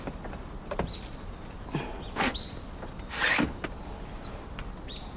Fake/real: real